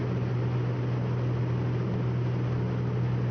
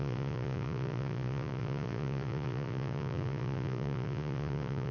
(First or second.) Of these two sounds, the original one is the first